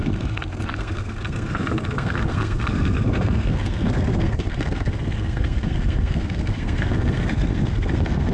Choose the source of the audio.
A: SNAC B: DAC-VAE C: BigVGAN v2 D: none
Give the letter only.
A